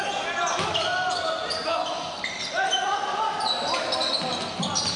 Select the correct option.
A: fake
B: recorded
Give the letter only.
B